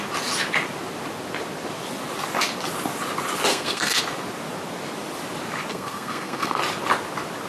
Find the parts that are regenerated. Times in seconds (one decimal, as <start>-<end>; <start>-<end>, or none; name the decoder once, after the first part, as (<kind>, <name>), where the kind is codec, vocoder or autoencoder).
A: 3.5-4.0 (codec, SNAC); 5.7-6.6